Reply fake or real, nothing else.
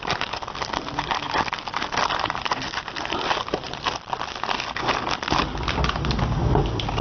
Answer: real